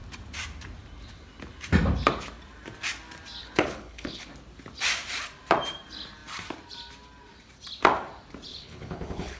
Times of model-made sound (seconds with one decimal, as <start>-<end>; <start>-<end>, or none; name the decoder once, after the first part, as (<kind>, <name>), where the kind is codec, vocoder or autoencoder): 3.4-4.3 (codec, HILCodec); 8.5-9.4